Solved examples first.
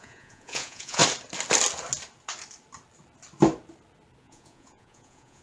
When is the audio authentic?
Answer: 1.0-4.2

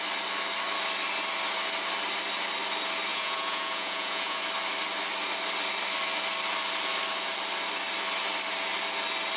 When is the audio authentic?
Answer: 0.0-3.1; 4.4-9.4

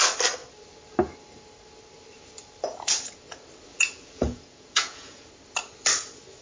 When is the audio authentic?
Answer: 0.0-3.7; 5.3-6.4

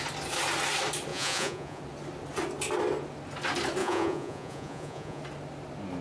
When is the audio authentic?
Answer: 0.0-1.1; 1.8-3.8; 5.2-6.0